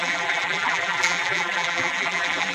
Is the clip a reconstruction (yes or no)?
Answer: yes